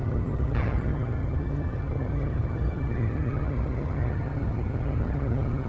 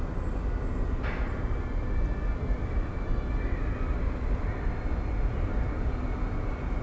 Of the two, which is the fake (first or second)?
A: first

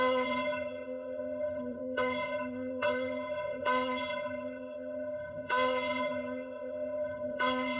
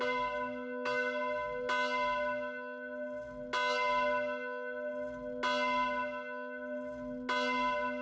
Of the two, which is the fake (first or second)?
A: first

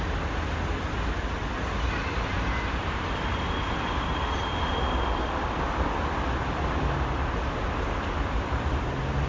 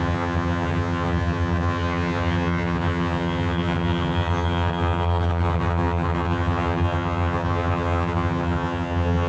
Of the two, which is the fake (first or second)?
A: second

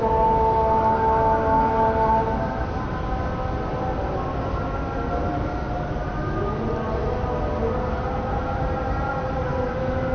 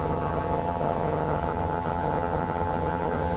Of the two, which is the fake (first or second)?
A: second